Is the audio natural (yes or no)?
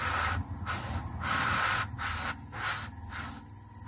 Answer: yes